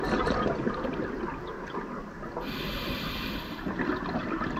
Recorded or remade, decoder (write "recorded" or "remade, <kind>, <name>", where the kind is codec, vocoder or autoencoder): recorded